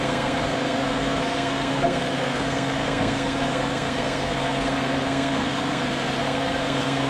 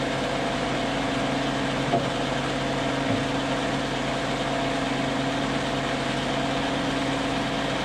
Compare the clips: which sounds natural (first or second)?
second